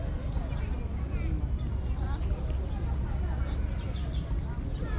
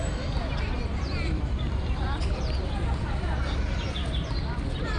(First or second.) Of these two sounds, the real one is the first